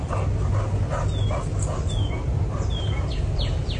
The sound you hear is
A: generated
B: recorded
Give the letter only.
B